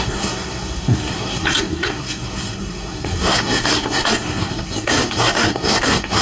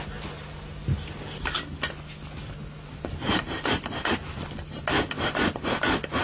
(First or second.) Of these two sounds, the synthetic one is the first